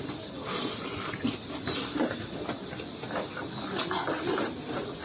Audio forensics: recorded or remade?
recorded